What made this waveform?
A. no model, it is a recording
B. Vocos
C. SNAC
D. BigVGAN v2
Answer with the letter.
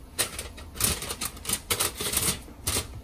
A